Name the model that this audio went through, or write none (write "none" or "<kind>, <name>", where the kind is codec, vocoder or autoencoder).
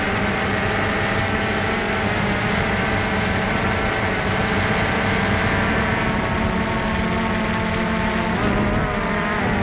none